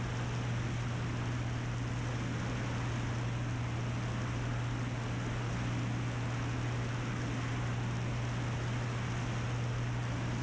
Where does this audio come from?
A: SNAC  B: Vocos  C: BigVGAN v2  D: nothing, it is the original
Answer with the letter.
D